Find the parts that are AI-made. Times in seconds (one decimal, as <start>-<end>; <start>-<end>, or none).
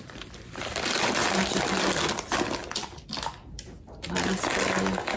none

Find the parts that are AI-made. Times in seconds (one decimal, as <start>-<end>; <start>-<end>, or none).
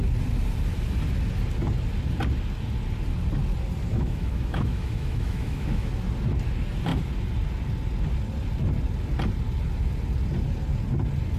3.9-5.9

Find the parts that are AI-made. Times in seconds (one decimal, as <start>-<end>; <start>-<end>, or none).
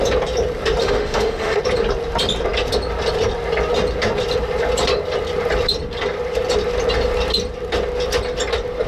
0.8-1.6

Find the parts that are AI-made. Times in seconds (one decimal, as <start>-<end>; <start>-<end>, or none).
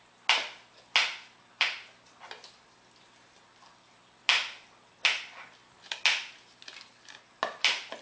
none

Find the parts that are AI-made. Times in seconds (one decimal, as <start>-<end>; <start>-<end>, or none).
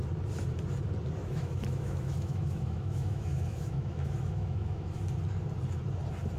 1.2-5.0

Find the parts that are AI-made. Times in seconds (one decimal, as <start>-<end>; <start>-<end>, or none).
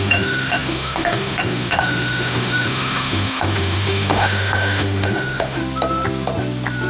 0.0-5.6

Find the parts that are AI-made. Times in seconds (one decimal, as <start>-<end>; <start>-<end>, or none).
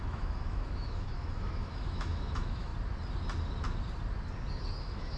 0.0-2.7; 4.8-5.2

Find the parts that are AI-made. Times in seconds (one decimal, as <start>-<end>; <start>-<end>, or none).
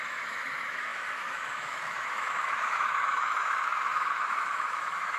0.0-5.2